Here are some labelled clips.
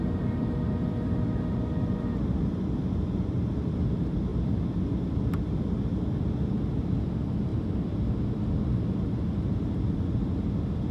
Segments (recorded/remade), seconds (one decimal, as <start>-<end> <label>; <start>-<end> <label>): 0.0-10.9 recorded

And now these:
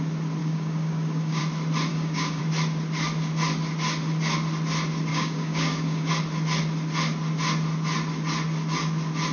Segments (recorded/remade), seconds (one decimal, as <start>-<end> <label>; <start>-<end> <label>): 0.0-0.4 recorded; 0.4-1.4 remade; 1.4-1.9 recorded; 1.9-2.4 remade; 2.4-5.1 recorded; 5.1-6.1 remade; 6.1-9.3 recorded

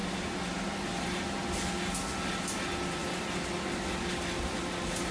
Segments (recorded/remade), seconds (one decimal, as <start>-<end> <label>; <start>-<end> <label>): 0.0-5.1 recorded

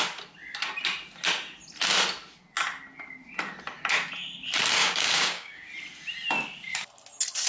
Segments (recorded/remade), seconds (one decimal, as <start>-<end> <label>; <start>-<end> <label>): 0.0-4.8 recorded; 4.8-5.7 remade; 5.7-7.5 recorded

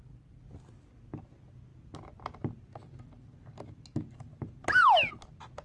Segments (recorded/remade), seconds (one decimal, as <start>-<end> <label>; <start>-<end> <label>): 0.0-5.6 recorded

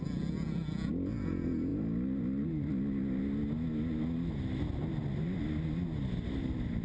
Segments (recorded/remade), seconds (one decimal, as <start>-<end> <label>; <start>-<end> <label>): 0.0-6.8 recorded

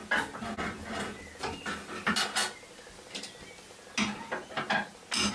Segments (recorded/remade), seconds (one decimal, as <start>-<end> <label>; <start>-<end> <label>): 0.0-5.3 recorded

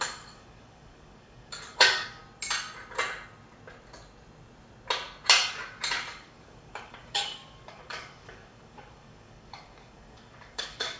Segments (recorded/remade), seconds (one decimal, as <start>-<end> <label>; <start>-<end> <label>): 0.0-2.2 remade; 2.2-6.1 recorded; 6.1-11.0 remade